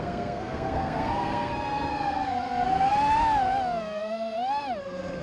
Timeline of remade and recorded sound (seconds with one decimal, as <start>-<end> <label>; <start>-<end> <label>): 0.0-2.9 remade; 2.9-4.8 recorded; 4.8-5.2 remade